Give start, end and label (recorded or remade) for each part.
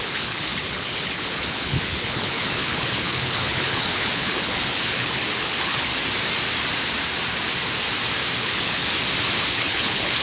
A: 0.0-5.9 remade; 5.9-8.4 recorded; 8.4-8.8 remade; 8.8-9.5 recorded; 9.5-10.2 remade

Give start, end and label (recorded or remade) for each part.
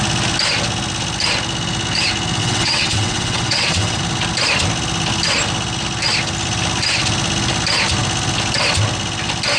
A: 0.0-2.4 recorded; 2.4-4.0 remade; 4.0-9.6 recorded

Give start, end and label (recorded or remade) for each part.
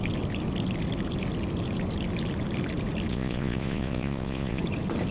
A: 0.0-3.1 recorded; 3.1-4.6 remade; 4.6-5.1 recorded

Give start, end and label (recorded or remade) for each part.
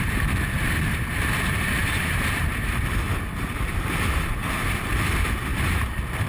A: 0.0-4.4 remade; 4.4-4.9 recorded; 4.9-6.3 remade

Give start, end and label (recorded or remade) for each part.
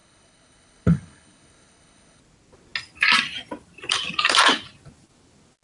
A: 0.0-2.2 remade; 2.2-5.6 recorded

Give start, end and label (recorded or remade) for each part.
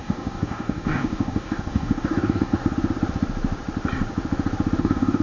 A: 0.0-2.6 remade; 2.6-4.8 recorded; 4.8-5.2 remade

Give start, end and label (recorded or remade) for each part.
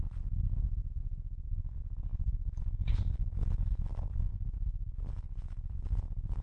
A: 0.0-2.1 recorded; 2.1-3.8 remade; 3.8-4.3 recorded; 4.3-5.1 remade; 5.1-6.4 recorded